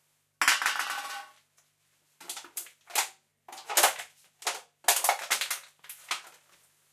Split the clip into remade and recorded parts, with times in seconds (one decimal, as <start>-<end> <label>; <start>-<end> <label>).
0.0-6.9 recorded